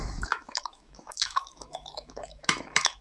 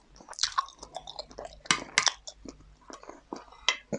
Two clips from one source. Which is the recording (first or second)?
second